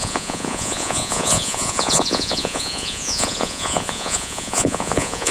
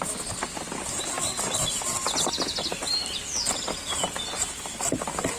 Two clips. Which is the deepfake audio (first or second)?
first